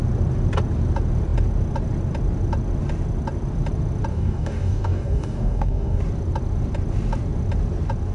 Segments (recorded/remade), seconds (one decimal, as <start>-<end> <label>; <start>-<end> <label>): 0.0-4.1 recorded; 4.1-6.0 remade; 6.0-8.1 recorded